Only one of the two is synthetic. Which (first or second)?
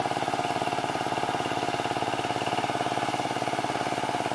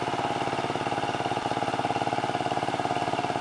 second